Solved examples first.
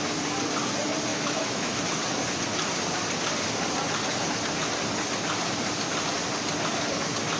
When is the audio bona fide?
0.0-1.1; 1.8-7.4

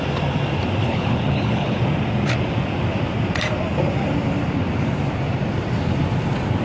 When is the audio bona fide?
0.0-0.8; 1.8-6.6

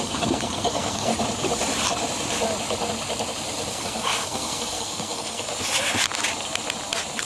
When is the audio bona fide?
1.1-3.7; 5.5-7.2

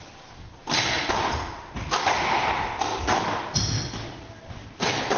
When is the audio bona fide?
0.0-5.2

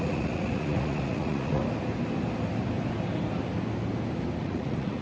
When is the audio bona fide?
1.6-4.4

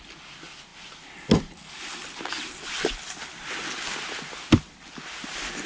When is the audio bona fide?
0.0-5.7

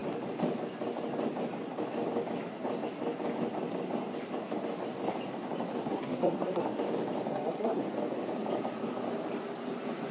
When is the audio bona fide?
0.0-5.9; 6.6-7.3; 7.8-10.1

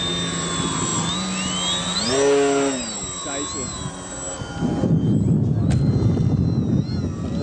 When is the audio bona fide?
0.0-7.4